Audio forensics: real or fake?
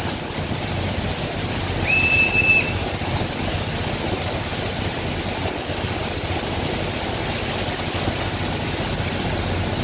real